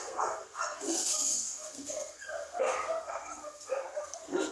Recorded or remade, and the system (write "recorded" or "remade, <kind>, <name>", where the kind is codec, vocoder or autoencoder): remade, codec, SNAC